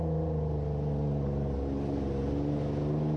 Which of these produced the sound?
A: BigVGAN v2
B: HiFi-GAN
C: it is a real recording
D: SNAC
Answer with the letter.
C